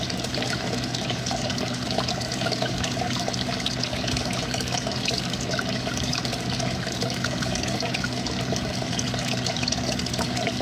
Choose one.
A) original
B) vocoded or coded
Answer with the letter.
B